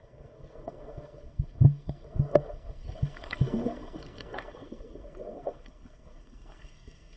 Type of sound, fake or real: fake